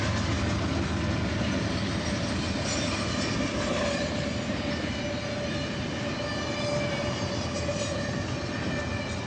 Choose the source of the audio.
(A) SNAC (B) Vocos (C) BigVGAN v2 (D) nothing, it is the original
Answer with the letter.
D